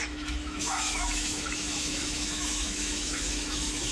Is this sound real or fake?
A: fake